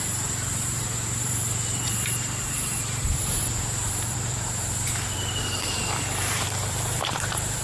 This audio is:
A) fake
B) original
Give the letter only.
A